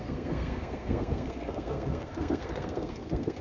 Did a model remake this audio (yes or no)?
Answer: yes